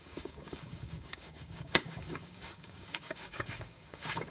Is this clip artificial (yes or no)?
yes